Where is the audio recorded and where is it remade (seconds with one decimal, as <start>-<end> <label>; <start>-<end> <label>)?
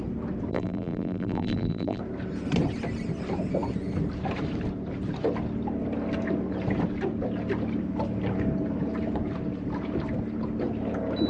0.0-0.5 recorded; 0.5-2.0 remade; 2.0-11.3 recorded